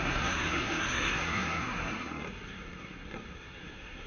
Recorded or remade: remade